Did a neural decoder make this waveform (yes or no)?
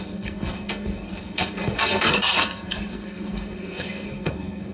yes